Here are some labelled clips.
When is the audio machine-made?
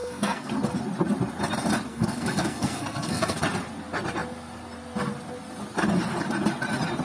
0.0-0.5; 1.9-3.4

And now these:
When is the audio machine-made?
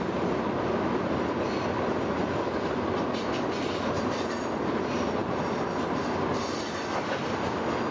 none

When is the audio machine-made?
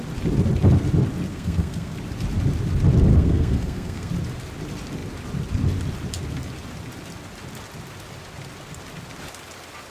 1.3-2.0; 3.1-4.1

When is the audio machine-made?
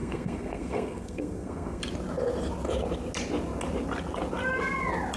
0.0-1.8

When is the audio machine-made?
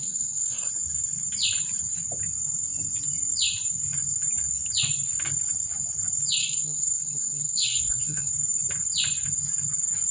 0.0-0.7; 6.4-8.3